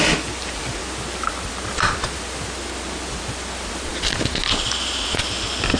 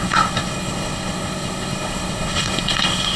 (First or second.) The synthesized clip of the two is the second